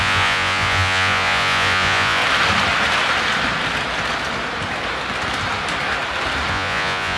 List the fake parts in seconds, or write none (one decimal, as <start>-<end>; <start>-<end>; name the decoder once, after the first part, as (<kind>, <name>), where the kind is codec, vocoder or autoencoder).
0.0-2.2 (vocoder, Vocos); 6.5-7.2